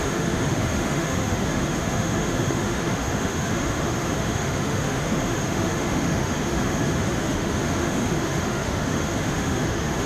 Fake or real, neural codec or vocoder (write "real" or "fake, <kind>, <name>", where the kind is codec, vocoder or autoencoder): fake, autoencoder, DAC-VAE